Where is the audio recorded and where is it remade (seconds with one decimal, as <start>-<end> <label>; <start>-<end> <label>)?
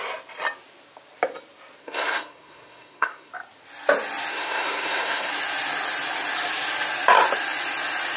0.0-1.8 recorded; 1.8-3.3 remade; 3.3-4.3 recorded; 4.3-5.3 remade; 5.3-8.2 recorded